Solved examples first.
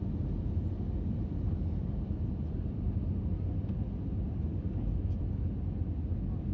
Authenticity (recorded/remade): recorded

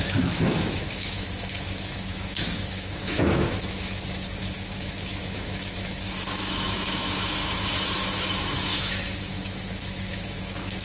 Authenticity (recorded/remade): remade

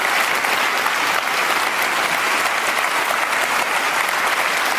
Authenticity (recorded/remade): recorded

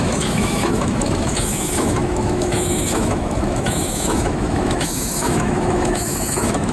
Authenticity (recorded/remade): remade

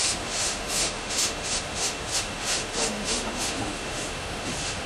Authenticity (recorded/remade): remade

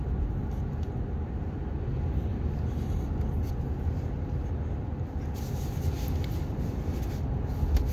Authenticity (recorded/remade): recorded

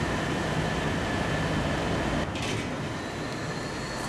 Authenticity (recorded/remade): recorded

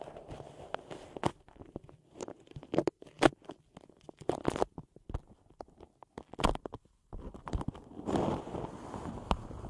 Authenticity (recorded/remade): recorded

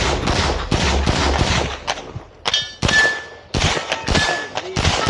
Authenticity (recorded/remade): recorded